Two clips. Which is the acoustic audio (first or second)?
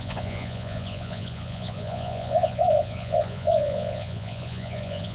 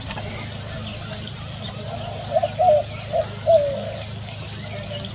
second